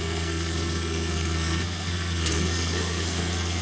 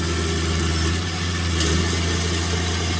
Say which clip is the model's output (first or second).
first